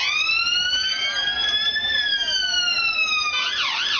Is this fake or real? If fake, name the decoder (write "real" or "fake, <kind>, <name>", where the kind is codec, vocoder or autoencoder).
real